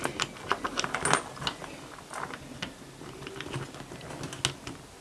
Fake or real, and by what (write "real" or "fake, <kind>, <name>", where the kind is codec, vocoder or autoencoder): real